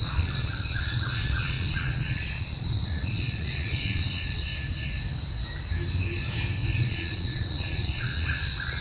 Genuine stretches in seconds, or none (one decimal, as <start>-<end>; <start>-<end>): 4.5-6.8